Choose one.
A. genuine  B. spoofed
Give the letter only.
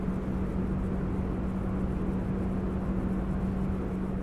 A